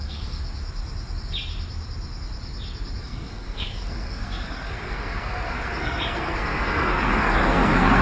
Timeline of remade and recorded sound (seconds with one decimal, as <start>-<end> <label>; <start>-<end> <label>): 0.0-0.4 remade; 0.4-3.0 recorded; 3.0-8.0 remade